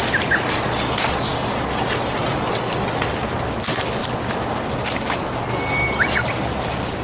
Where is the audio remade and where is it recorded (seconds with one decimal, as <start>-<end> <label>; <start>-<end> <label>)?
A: 0.0-7.0 recorded